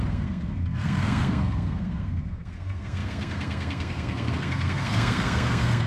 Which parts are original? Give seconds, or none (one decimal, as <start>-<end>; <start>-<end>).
none